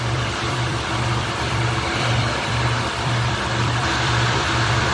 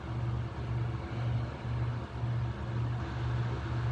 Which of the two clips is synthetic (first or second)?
first